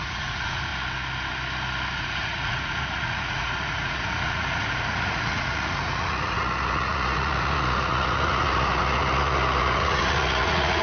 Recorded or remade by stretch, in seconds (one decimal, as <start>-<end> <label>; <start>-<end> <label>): 0.0-0.7 remade; 0.7-2.0 recorded; 2.0-10.8 remade